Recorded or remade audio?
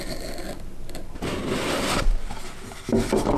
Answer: recorded